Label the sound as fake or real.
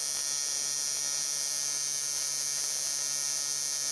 real